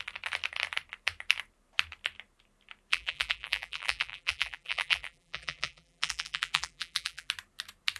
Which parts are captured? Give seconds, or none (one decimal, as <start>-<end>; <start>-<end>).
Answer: 0.0-2.9; 7.3-8.0